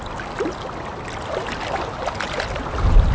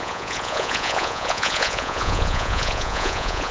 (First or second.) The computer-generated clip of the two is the second